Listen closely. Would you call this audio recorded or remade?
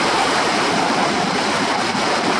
recorded